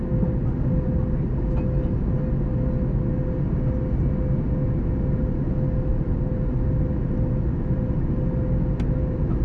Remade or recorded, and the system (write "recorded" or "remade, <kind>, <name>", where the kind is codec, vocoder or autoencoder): recorded